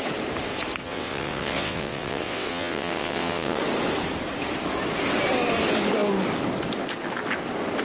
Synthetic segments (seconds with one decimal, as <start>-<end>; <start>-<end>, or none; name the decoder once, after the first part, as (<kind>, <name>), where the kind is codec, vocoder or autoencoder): 0.8-3.6 (vocoder, WaveNeXt)